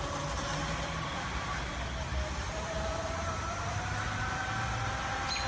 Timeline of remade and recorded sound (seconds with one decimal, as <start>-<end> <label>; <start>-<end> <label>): 0.0-0.6 recorded; 0.6-1.7 remade; 1.7-2.1 recorded; 2.1-4.2 remade; 4.2-5.5 recorded